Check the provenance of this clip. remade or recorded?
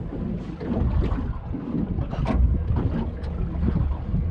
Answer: recorded